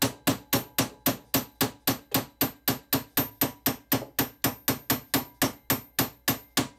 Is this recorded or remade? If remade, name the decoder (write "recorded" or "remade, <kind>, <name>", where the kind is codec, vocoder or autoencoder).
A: recorded